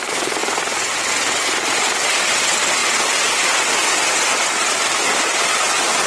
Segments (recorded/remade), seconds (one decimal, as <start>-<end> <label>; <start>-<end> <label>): 0.0-6.1 recorded